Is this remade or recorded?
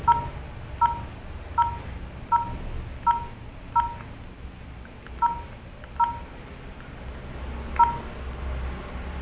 recorded